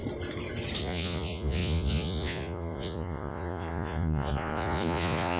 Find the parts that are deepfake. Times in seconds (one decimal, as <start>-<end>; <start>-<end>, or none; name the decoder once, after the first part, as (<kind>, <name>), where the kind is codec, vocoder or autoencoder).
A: 0.8-5.4 (vocoder, Vocos)